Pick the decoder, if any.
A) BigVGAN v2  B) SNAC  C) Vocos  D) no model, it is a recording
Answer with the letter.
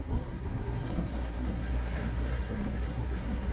B